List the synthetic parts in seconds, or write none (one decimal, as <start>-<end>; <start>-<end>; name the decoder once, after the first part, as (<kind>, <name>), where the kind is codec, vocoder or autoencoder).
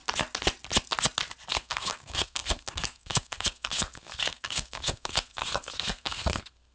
1.5-6.7 (codec, SNAC)